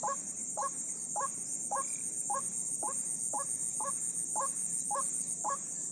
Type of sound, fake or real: real